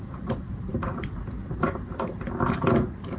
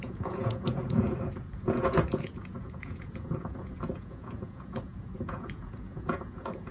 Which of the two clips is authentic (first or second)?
first